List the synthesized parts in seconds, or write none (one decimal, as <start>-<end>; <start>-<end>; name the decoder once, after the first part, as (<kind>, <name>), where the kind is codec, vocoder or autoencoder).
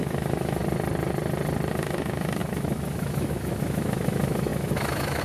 0.0-0.6 (autoencoder, DAC-VAE); 1.7-5.2